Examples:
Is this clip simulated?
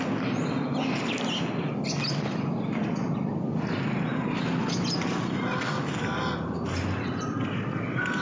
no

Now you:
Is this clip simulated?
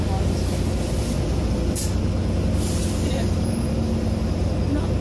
no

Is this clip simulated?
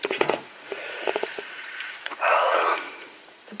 yes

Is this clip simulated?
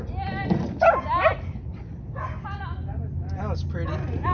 no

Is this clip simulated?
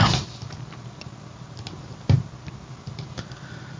no